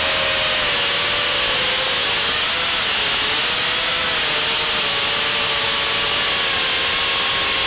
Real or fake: real